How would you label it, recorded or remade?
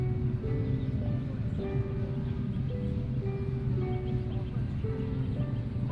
recorded